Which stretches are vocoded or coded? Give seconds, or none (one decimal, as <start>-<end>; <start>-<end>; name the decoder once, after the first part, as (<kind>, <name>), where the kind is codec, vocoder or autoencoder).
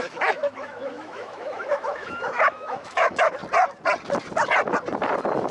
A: 0.0-3.4 (autoencoder, DAC-VAE)